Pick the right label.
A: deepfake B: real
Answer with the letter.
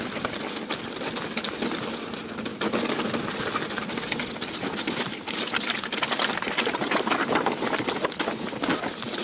B